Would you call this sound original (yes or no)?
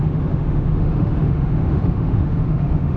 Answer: no